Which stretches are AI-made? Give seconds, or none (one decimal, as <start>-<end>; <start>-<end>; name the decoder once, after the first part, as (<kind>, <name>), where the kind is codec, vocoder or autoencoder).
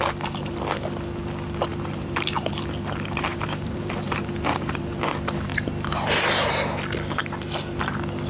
1.7-2.5 (vocoder, BigVGAN v2); 3.3-4.8